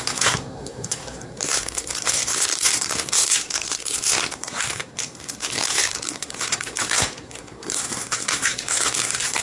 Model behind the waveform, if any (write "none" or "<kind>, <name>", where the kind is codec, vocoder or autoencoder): codec, SNAC